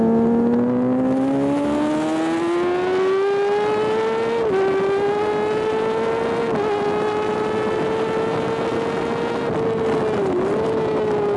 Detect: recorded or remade recorded